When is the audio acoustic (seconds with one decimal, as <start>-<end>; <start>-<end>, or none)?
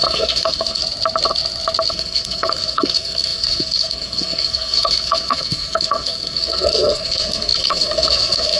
0.8-1.9